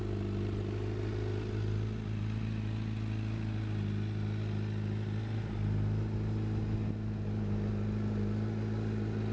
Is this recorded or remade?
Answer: recorded